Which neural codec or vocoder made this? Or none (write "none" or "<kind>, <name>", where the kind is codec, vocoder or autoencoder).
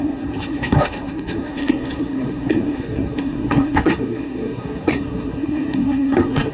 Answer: codec, SNAC